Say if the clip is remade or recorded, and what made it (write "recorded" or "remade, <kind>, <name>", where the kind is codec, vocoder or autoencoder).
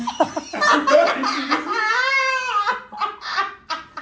recorded